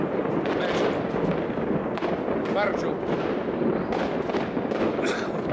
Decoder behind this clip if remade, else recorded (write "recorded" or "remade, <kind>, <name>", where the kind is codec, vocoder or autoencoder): recorded